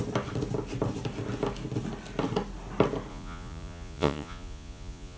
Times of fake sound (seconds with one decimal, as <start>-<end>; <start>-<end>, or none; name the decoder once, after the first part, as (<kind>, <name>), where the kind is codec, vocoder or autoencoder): 3.1-5.2 (vocoder, Vocos)